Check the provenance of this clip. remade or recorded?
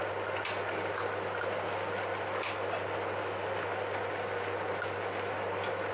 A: recorded